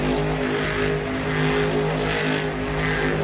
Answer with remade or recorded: recorded